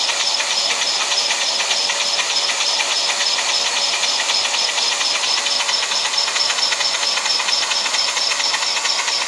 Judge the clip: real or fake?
real